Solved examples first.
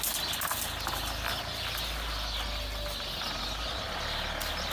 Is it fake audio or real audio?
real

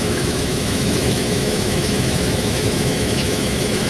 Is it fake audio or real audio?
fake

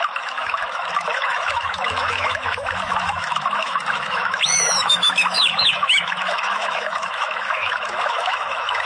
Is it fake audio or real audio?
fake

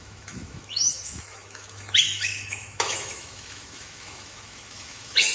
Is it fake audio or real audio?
fake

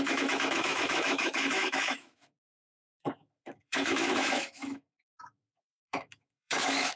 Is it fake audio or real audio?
fake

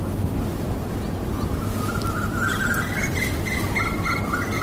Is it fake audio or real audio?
real